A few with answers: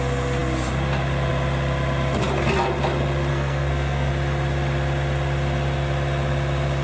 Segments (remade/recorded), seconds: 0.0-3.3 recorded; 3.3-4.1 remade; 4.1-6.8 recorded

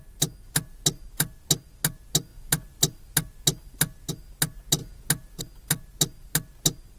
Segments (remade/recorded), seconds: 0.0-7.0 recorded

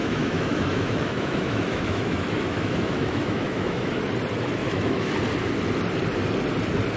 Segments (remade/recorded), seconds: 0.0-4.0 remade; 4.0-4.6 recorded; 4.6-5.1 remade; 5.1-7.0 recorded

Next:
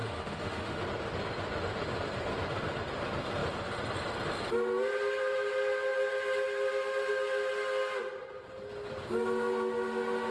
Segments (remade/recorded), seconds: 0.0-0.8 remade; 0.8-10.3 recorded

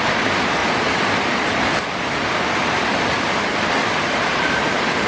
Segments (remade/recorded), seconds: 0.0-5.1 remade